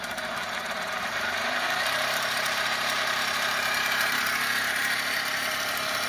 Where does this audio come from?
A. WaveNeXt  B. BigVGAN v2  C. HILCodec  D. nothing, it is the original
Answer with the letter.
B